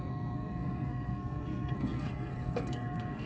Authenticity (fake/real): fake